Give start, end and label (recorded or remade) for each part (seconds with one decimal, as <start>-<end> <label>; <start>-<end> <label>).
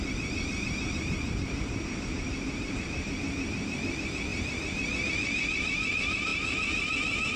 0.0-4.3 remade; 4.3-5.1 recorded; 5.1-6.3 remade; 6.3-7.4 recorded